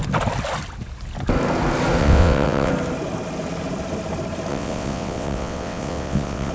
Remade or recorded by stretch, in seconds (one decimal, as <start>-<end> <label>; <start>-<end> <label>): 0.0-2.0 recorded; 2.0-2.7 remade; 2.7-4.5 recorded; 4.5-6.5 remade